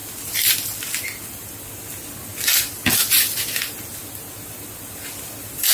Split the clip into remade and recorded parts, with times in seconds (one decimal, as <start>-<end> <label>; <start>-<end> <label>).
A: 0.0-1.7 remade; 1.7-5.7 recorded

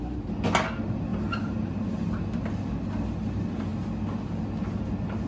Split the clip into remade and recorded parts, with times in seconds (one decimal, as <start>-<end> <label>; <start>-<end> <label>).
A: 0.0-1.1 recorded; 1.1-2.2 remade; 2.2-5.3 recorded

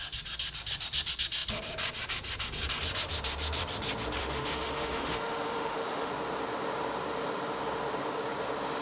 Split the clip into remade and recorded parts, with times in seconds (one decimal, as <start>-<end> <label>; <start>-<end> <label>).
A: 0.0-4.2 recorded; 4.2-6.1 remade; 6.1-8.8 recorded

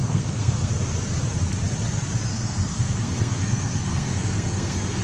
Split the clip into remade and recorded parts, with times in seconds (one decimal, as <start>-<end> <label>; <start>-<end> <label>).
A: 0.0-0.7 remade; 0.7-2.3 recorded; 2.3-5.0 remade

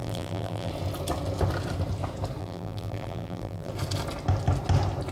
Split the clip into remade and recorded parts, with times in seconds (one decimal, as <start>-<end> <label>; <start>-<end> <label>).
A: 0.0-0.7 remade; 0.7-2.4 recorded; 2.4-3.7 remade; 3.7-5.1 recorded

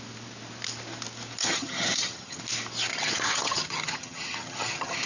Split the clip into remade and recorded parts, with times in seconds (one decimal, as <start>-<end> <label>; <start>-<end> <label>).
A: 0.0-1.4 recorded; 1.4-2.4 remade; 2.4-2.9 recorded; 2.9-5.1 remade

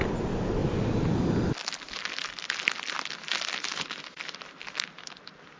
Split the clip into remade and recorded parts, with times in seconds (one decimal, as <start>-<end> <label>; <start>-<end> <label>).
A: 0.0-5.6 recorded